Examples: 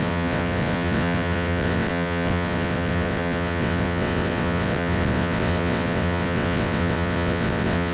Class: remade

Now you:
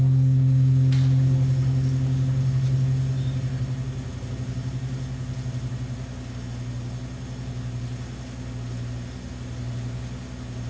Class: recorded